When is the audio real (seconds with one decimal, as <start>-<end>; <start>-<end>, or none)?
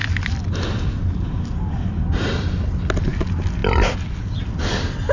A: 0.0-5.1